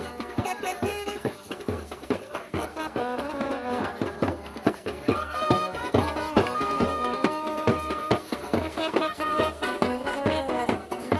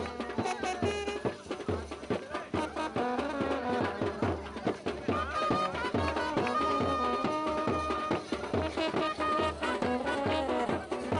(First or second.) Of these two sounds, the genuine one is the second